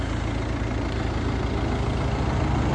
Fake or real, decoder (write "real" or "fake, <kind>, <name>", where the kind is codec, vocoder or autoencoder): real